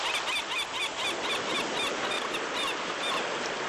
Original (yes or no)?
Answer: yes